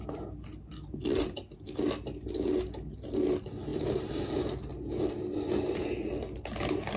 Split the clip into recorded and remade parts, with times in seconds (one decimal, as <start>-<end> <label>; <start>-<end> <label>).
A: 0.0-3.7 recorded; 3.7-4.5 remade; 4.5-7.0 recorded